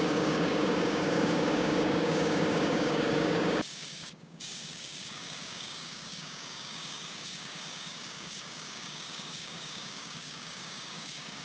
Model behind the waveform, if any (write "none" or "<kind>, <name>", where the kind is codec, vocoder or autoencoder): codec, DAC